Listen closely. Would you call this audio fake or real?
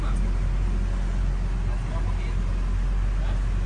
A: real